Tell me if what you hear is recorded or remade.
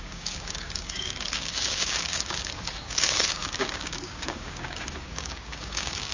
remade